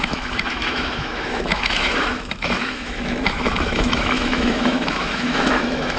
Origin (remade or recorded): remade